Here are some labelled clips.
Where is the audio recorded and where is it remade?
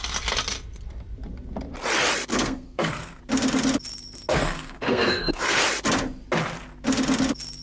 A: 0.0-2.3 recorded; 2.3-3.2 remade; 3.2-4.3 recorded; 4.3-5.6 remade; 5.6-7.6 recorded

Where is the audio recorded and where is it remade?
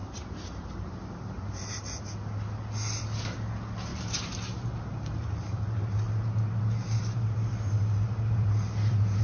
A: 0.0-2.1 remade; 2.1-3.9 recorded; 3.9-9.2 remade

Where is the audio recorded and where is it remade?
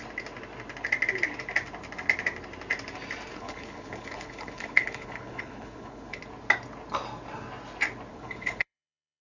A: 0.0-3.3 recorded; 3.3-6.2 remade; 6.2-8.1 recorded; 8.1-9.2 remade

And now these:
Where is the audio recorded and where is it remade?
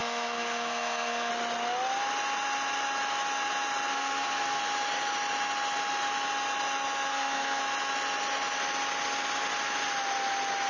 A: 0.0-1.3 remade; 1.3-3.9 recorded; 3.9-4.6 remade; 4.6-7.1 recorded; 7.1-7.6 remade; 7.6-10.7 recorded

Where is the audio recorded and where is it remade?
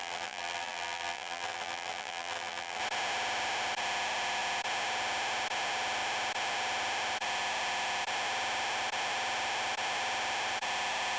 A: 0.0-2.8 remade; 2.8-11.2 recorded